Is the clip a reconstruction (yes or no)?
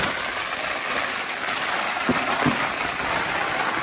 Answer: no